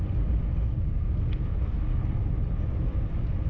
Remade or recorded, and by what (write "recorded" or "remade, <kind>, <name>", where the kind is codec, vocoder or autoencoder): recorded